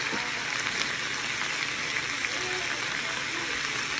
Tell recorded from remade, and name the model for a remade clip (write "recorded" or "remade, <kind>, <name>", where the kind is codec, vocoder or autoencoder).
recorded